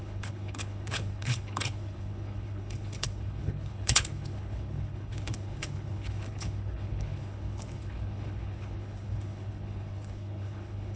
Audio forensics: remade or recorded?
remade